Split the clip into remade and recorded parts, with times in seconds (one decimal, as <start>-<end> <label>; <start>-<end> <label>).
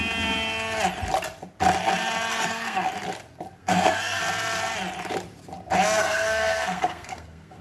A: 0.0-2.3 recorded; 2.3-2.9 remade; 2.9-3.6 recorded; 3.6-4.2 remade; 4.2-6.0 recorded; 6.0-7.6 remade